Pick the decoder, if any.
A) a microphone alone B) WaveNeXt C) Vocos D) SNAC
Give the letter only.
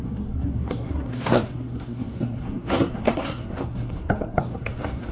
D